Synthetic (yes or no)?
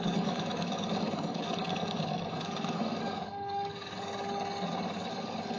yes